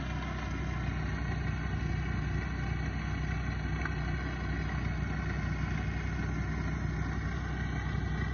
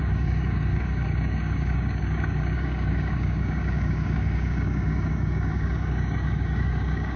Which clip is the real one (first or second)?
first